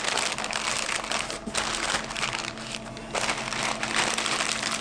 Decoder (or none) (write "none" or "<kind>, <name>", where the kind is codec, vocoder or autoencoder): none